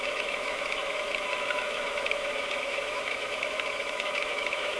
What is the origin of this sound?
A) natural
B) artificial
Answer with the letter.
B